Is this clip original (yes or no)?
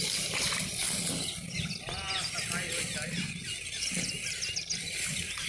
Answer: yes